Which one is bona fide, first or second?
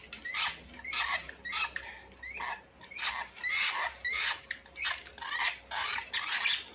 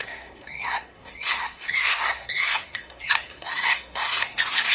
first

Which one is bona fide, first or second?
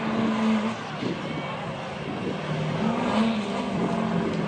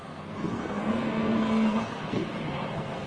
first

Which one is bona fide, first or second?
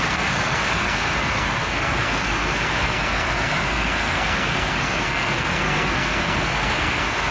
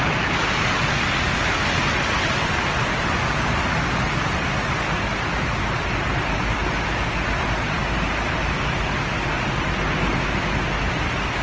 second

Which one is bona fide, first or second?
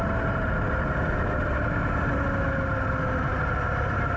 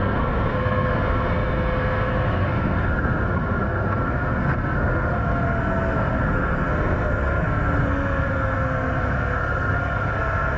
first